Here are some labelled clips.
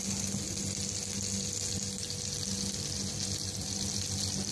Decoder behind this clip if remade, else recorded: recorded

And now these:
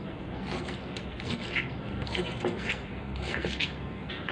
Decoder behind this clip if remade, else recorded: remade, codec, SNAC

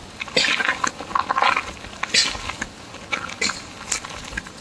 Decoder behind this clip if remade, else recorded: recorded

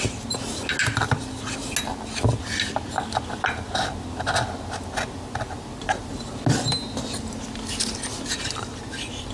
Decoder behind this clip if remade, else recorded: recorded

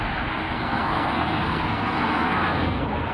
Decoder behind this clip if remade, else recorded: remade, codec, SNAC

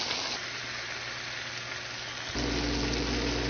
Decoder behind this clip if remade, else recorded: recorded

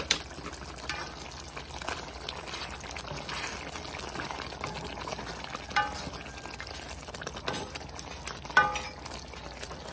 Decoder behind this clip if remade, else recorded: recorded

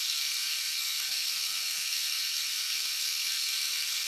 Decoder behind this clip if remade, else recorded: remade, codec, SNAC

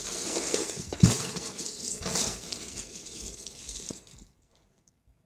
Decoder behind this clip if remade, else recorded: remade, codec, SNAC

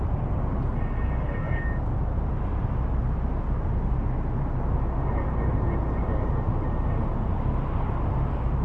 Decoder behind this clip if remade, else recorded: recorded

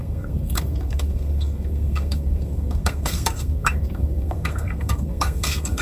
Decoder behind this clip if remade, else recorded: remade, codec, SNAC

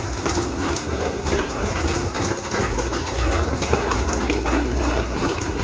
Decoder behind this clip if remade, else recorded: remade, codec, SNAC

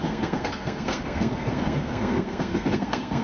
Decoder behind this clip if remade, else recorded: remade, codec, SNAC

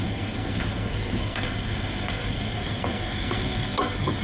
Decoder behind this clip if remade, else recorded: remade, codec, SNAC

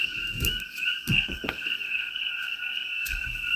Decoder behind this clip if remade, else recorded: remade, codec, SNAC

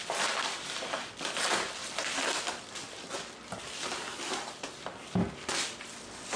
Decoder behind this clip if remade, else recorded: recorded